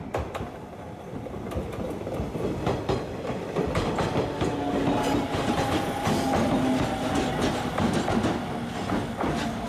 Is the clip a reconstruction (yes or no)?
no